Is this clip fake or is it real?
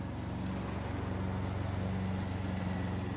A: real